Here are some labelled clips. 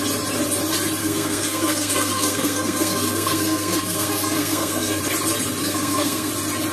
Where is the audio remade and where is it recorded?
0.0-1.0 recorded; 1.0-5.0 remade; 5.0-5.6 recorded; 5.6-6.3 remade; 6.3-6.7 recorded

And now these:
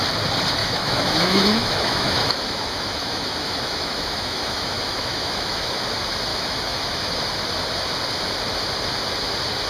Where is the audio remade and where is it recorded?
0.0-0.6 recorded; 0.6-5.8 remade; 5.8-6.3 recorded; 6.3-7.2 remade; 7.2-9.7 recorded